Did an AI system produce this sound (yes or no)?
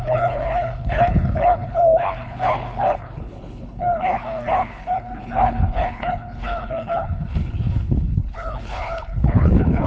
yes